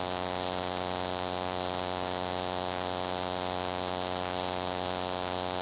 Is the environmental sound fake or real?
real